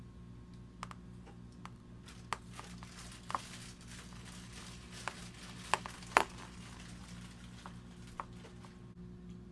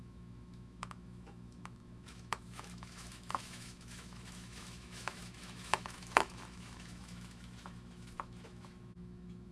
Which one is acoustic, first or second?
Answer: first